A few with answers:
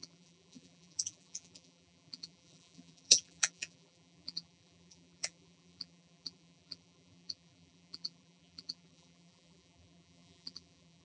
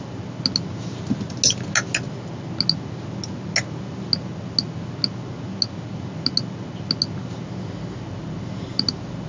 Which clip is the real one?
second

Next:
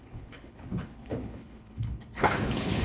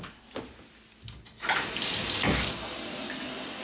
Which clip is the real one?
second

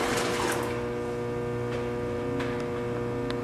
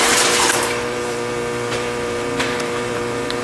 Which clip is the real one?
first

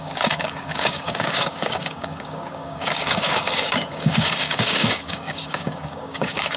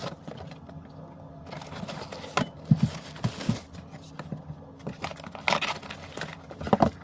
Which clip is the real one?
second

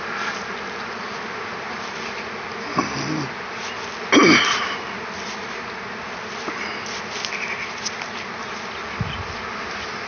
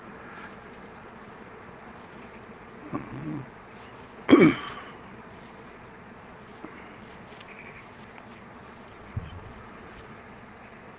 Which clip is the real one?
first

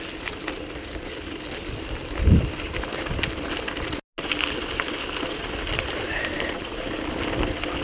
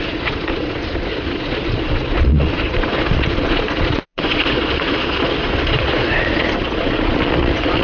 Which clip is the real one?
first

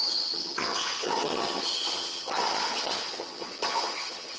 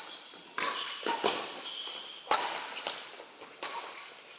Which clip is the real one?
second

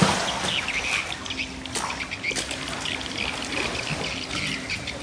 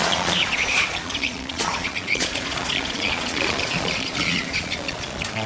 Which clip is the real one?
first